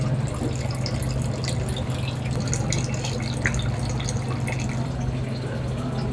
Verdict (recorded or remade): recorded